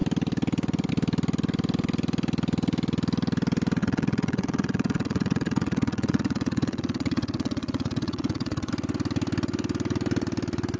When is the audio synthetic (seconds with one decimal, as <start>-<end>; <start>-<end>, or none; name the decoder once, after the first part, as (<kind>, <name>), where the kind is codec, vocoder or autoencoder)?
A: 3.8-8.7 (vocoder, WaveNeXt)